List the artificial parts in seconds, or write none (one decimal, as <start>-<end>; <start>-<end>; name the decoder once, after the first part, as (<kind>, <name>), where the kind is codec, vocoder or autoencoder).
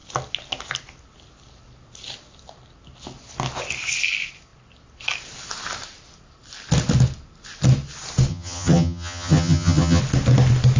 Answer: 8.3-10.0 (vocoder, HiFi-GAN)